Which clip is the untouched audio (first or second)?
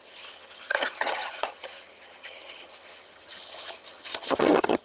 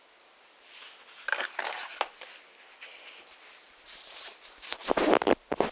second